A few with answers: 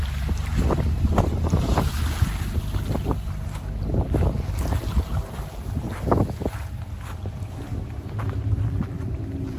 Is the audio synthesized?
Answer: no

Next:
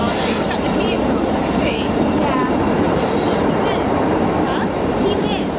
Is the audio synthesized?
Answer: yes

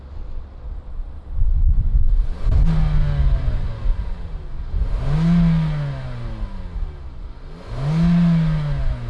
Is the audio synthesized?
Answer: no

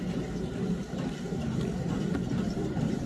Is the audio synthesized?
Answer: yes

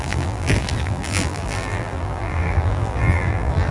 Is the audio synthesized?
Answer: yes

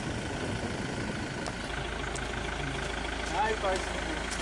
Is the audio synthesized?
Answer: no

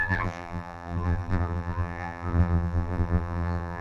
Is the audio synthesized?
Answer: yes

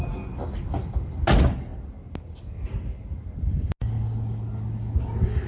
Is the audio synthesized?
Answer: no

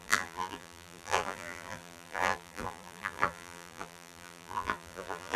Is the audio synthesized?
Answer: yes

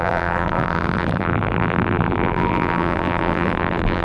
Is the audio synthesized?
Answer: yes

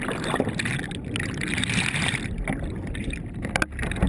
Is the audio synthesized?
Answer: no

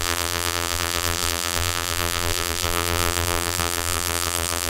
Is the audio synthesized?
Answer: yes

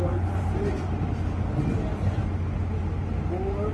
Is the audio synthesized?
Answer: no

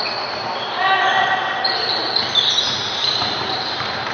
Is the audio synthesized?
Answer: yes